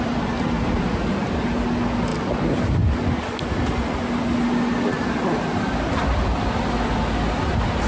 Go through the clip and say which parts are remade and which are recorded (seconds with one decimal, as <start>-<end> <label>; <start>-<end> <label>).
0.0-2.1 recorded; 2.1-2.6 remade; 2.6-7.9 recorded